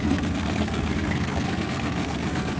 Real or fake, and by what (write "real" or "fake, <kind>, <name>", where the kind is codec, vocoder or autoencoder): fake, codec, SNAC